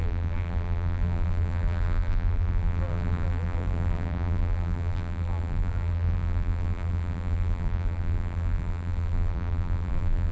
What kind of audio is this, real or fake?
fake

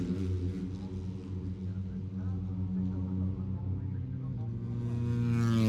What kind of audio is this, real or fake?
real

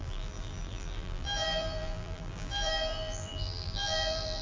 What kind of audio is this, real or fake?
fake